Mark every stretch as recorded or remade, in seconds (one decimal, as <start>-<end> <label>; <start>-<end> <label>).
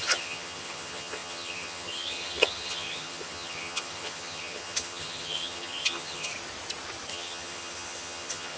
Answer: 0.0-6.3 remade; 6.3-7.1 recorded; 7.1-8.6 remade